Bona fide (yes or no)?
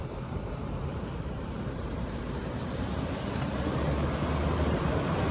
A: no